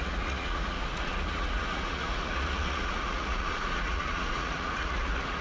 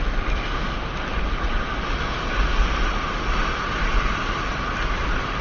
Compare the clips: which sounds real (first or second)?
second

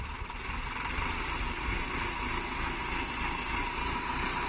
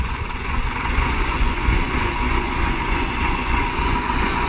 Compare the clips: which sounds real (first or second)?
first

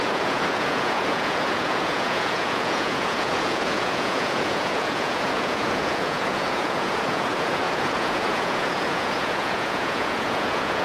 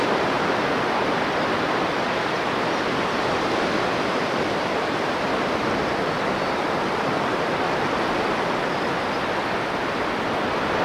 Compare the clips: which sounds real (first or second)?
second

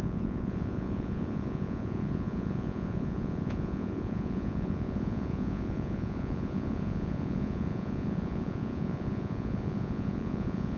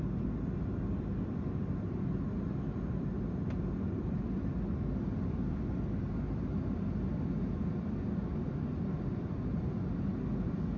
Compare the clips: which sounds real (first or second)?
second